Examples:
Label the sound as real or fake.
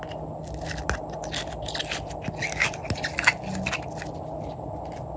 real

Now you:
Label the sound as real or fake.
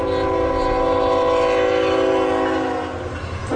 real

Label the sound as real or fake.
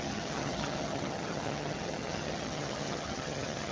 fake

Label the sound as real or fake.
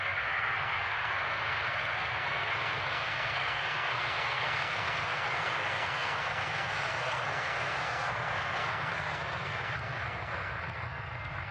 fake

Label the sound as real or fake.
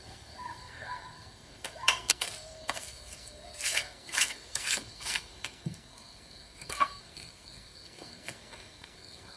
fake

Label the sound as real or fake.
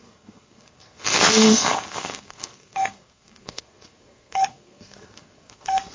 fake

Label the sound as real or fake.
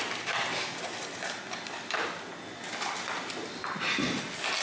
real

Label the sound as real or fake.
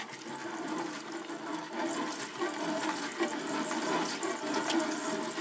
real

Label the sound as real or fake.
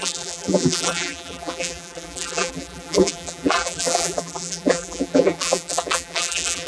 fake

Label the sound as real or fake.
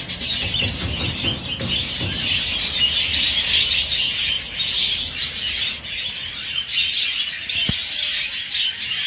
real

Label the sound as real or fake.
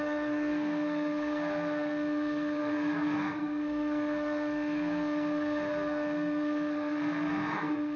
fake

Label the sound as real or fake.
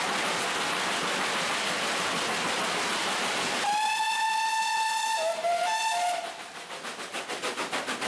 real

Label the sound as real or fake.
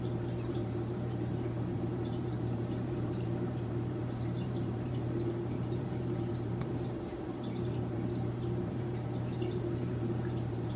fake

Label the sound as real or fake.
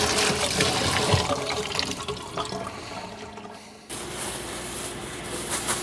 real